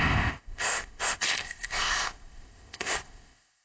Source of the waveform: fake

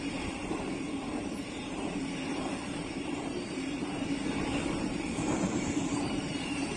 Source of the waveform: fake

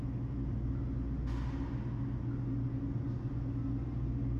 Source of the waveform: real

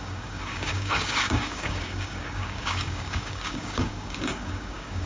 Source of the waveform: fake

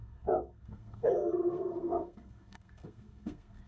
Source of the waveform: fake